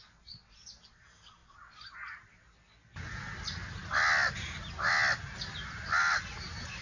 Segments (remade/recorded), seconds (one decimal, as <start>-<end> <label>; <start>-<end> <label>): 0.0-6.8 recorded